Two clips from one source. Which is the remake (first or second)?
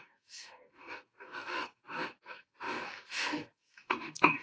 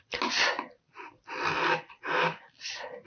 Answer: first